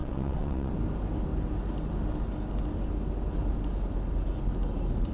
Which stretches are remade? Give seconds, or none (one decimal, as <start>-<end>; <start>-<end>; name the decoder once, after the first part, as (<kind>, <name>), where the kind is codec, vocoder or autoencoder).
0.0-0.7 (vocoder, WaveNeXt)